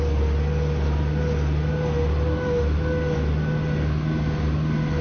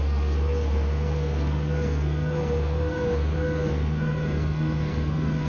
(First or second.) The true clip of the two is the first